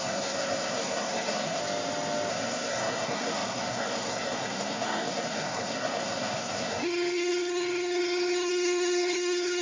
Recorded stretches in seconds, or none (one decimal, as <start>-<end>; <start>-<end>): 1.6-2.3